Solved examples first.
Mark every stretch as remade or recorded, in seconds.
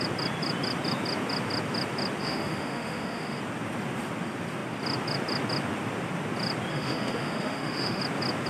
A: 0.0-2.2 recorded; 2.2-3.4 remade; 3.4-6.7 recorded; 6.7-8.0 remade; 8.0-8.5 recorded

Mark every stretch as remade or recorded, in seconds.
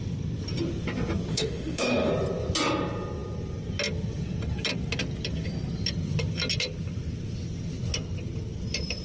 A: 0.0-1.3 recorded; 1.3-2.1 remade; 2.1-9.0 recorded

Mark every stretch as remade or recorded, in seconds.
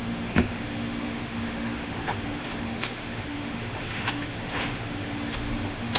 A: 0.0-6.0 remade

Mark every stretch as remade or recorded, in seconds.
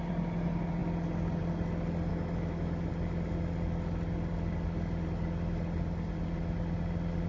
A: 0.0-2.1 recorded; 2.1-2.9 remade; 2.9-7.3 recorded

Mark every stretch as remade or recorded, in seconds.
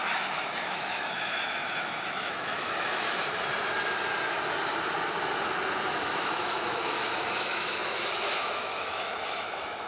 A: 0.0-3.2 remade; 3.2-5.9 recorded; 5.9-9.9 remade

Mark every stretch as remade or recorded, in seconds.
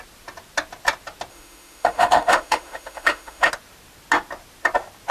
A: 0.0-1.3 recorded; 1.3-3.5 remade; 3.5-5.1 recorded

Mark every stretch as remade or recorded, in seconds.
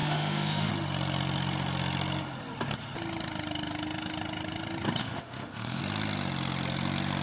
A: 0.0-0.7 remade; 0.7-5.0 recorded; 5.0-5.8 remade; 5.8-7.2 recorded